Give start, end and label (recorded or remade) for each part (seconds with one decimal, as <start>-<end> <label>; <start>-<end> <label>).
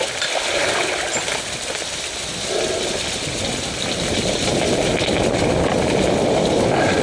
0.0-7.0 recorded